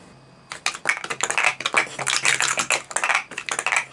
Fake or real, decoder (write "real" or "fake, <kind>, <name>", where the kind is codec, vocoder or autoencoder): real